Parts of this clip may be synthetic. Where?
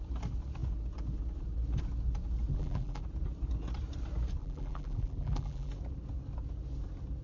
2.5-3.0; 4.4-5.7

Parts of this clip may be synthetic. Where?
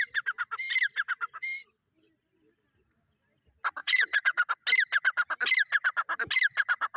3.8-4.5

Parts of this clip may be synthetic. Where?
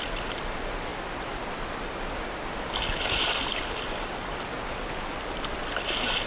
none